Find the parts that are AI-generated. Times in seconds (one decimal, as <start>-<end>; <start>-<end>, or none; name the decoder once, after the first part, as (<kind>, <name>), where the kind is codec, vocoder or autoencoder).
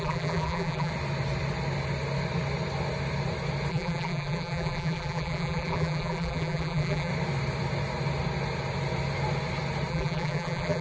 0.0-0.9 (vocoder, BigVGAN v2); 3.7-7.1; 9.9-10.8